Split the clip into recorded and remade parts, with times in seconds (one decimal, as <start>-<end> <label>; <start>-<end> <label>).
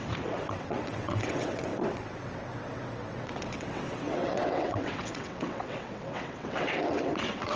0.0-7.6 remade